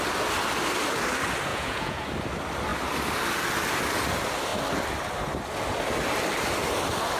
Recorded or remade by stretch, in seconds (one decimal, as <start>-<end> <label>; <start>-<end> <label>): 0.0-1.5 recorded; 1.5-2.1 remade; 2.1-7.2 recorded